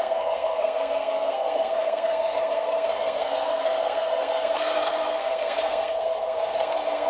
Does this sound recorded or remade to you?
remade